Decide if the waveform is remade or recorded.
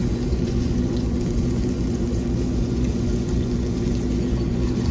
remade